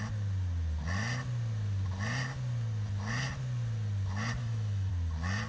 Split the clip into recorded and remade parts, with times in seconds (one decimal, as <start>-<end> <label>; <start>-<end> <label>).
0.0-4.4 recorded; 4.4-4.9 remade; 4.9-5.5 recorded